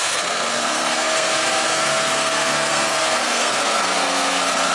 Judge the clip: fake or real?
fake